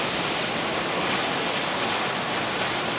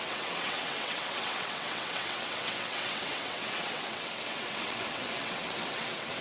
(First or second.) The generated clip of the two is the second